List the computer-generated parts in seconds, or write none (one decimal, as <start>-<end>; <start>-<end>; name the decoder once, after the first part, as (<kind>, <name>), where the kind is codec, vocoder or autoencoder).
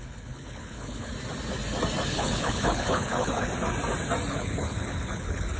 0.0-1.1 (codec, HILCodec); 2.1-3.5; 4.3-5.6